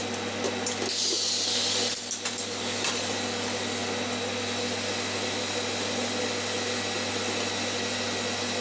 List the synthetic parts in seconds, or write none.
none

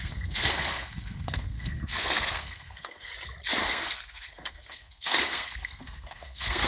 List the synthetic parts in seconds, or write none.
0.0-3.1 (codec, SNAC); 3.7-6.7

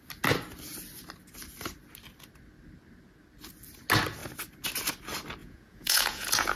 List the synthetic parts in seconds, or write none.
5.4-6.6 (vocoder, Vocos)